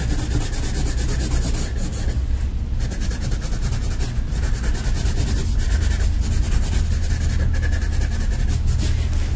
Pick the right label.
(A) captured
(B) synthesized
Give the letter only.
A